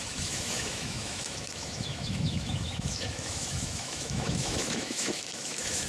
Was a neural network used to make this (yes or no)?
yes